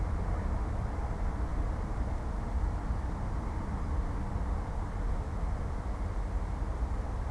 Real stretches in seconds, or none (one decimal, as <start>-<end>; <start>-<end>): 0.0-7.3